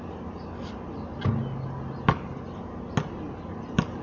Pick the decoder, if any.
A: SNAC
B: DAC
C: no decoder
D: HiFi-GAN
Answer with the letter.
C